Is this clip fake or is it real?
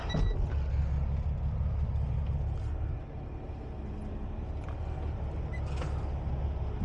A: real